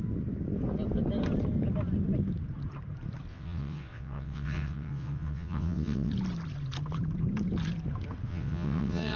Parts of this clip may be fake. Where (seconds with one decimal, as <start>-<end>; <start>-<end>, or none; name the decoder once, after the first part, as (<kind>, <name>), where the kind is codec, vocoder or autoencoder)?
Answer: 3.3-6.1 (vocoder, WaveNeXt); 8.3-9.2